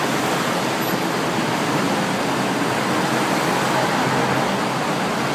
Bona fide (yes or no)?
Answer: yes